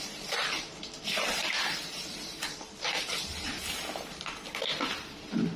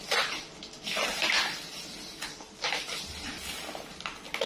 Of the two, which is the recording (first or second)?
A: second